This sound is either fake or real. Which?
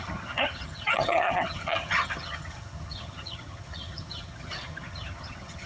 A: fake